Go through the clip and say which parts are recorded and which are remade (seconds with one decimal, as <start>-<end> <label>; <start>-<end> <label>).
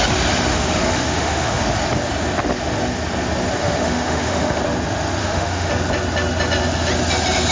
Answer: 0.0-0.5 recorded; 0.5-1.6 remade; 1.6-3.6 recorded; 3.6-4.6 remade; 4.6-5.2 recorded; 5.2-5.7 remade; 5.7-7.5 recorded